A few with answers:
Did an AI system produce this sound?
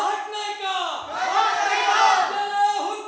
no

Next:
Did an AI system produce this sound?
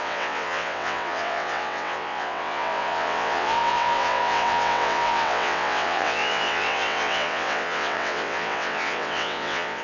yes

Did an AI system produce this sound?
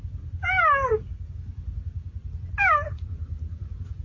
no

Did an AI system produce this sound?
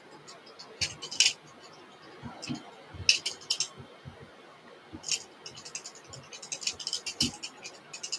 no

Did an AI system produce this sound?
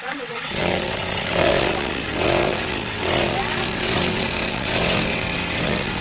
yes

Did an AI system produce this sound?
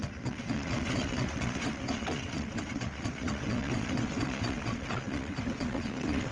yes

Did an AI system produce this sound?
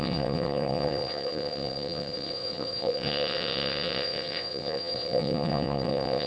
yes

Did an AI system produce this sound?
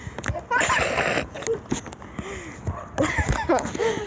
no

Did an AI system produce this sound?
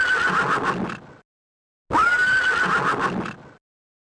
no